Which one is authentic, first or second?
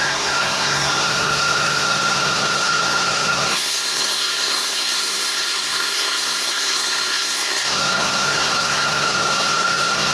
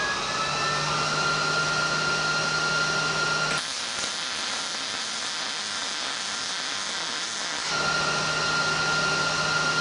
second